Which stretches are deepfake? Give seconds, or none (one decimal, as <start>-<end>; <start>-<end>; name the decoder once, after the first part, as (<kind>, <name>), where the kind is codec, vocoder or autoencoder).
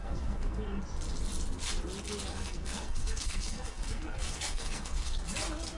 0.0-0.8 (codec, SNAC); 2.3-5.2